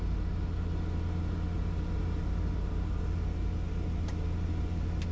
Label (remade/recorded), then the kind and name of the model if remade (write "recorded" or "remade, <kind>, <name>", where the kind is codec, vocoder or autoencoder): recorded